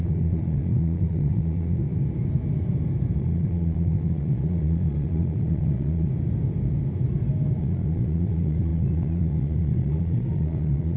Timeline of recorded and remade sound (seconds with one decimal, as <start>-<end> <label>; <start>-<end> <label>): 0.0-1.8 remade; 1.8-3.2 recorded; 3.2-6.1 remade; 6.1-7.6 recorded; 7.6-11.0 remade